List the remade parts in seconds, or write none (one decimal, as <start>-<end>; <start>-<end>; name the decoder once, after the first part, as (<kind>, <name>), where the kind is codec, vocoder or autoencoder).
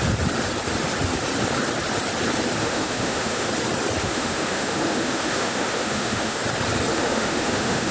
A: 2.6-3.5 (autoencoder, DAC-VAE); 4.0-6.4; 6.9-7.9